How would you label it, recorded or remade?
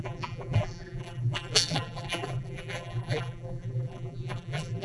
remade